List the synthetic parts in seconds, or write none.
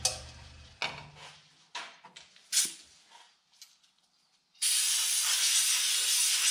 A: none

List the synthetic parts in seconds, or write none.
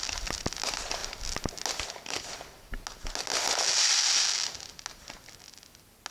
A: none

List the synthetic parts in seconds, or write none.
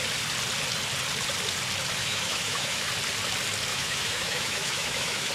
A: 2.0-2.9; 3.7-5.3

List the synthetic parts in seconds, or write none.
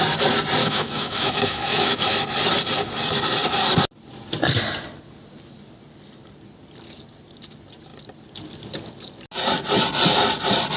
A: 0.6-2.0